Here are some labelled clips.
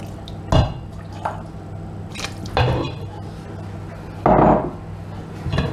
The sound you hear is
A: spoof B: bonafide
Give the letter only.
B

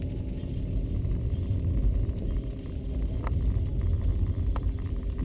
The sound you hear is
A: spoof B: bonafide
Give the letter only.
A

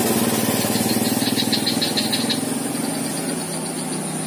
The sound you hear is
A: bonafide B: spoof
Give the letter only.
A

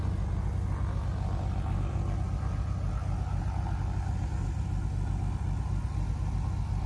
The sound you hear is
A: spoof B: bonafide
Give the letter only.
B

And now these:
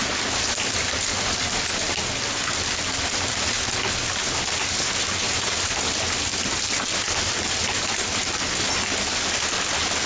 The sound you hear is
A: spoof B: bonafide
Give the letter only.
B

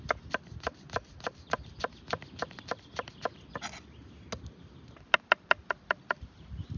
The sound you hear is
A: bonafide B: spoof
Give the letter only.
A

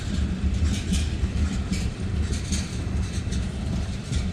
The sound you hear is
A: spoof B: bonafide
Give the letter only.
A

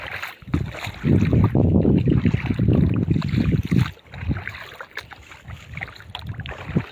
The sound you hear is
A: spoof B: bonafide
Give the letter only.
B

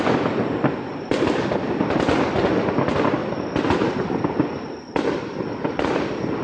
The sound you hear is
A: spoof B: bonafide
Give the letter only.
B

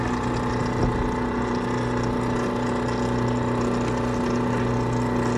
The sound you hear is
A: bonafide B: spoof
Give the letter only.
A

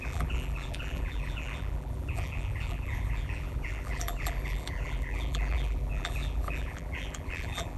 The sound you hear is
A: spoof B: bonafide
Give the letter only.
A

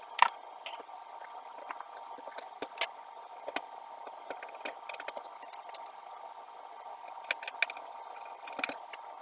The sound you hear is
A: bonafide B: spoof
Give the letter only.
A